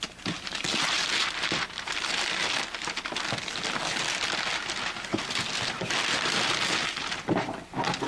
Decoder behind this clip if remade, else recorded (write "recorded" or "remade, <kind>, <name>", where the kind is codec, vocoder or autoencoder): recorded